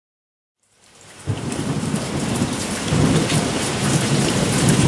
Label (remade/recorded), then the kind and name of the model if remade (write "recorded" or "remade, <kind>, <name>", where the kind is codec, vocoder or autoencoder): remade, vocoder, BigVGAN v2